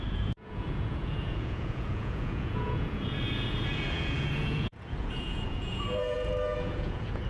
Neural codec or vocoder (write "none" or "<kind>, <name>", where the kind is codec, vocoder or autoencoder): vocoder, Vocos